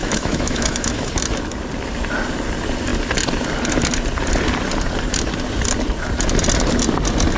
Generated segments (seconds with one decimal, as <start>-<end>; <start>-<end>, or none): 0.0-1.1